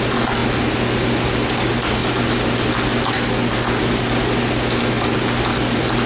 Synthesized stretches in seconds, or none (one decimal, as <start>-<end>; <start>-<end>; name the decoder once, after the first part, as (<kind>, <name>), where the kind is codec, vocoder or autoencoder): none